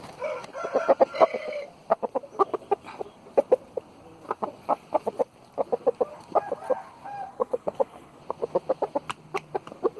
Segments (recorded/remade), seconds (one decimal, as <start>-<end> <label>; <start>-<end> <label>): 0.0-7.3 recorded; 7.3-8.2 remade; 8.2-10.0 recorded

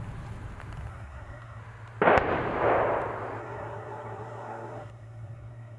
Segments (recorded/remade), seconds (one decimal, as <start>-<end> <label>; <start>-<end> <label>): 0.0-0.9 recorded; 0.9-1.6 remade; 1.6-3.4 recorded; 3.4-5.8 remade

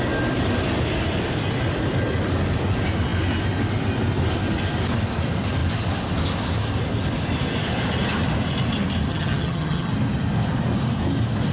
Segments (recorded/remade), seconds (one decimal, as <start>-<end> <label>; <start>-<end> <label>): 0.0-9.1 recorded; 9.1-9.9 remade; 9.9-11.5 recorded

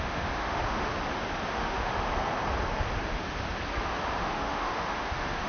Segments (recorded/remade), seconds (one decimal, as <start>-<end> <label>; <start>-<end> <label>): 0.0-0.9 remade; 0.9-1.5 recorded; 1.5-1.9 remade; 1.9-4.2 recorded; 4.2-5.5 remade

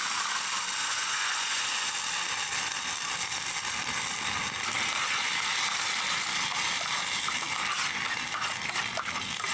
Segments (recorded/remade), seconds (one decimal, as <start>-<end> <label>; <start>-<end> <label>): 0.0-0.8 recorded; 0.8-1.9 remade; 1.9-9.5 recorded

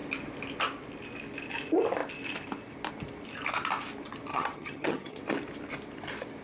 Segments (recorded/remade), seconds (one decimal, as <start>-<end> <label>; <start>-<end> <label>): 0.0-4.3 recorded; 4.3-5.2 remade; 5.2-6.4 recorded

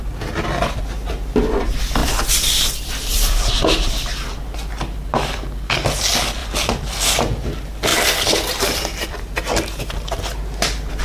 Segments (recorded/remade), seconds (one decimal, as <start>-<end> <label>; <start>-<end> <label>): 0.0-2.0 recorded; 2.0-4.3 remade; 4.3-6.4 recorded; 6.4-7.0 remade; 7.0-7.9 recorded; 7.9-9.2 remade; 9.2-11.0 recorded

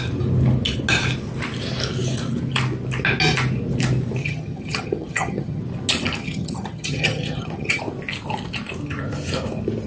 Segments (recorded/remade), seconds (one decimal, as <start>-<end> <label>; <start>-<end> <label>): 0.0-4.2 recorded; 4.2-5.6 remade; 5.6-6.2 recorded; 6.2-7.8 remade; 7.8-9.9 recorded